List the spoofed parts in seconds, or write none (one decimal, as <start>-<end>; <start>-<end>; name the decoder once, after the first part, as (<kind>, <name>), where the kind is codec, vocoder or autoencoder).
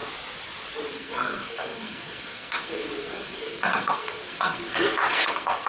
0.9-5.7 (codec, SNAC)